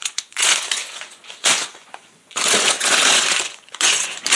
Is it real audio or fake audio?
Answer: fake